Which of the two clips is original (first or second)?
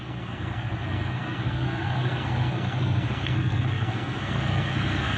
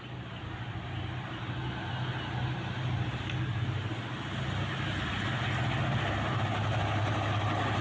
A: second